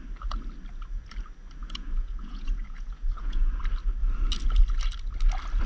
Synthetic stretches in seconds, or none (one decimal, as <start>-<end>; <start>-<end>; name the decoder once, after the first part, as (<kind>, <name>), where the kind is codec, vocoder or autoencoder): 1.6-3.6 (vocoder, Vocos)